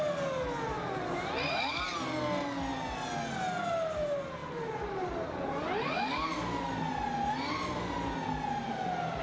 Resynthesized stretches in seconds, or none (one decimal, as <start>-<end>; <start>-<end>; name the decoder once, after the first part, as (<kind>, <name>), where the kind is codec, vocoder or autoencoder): none